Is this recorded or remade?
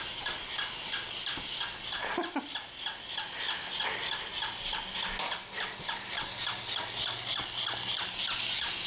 recorded